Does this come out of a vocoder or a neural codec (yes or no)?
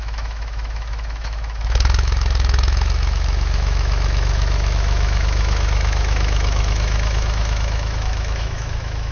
yes